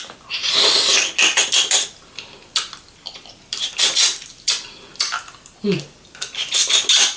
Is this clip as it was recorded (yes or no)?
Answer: yes